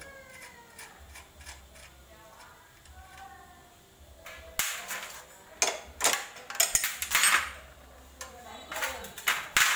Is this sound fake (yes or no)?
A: no